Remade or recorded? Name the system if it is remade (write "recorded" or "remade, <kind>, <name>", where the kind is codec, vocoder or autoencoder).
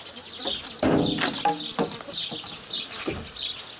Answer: recorded